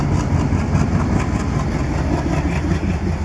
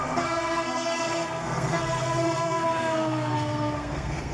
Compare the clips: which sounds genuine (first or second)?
first